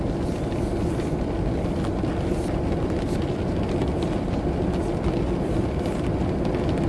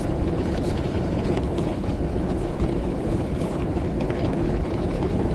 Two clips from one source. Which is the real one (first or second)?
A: first